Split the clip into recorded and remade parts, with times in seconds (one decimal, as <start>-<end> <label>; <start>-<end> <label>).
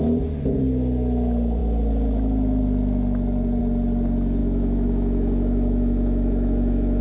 0.0-4.4 recorded; 4.4-7.0 remade